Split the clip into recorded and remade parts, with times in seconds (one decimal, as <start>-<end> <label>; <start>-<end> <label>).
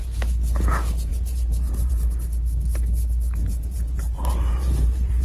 0.0-1.1 recorded; 1.1-1.9 remade; 1.9-3.4 recorded; 3.4-5.2 remade